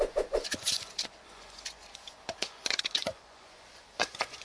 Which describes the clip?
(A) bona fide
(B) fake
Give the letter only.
B